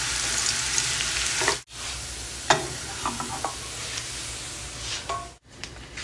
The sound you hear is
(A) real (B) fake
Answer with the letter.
A